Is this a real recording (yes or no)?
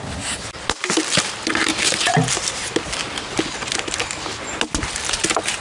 yes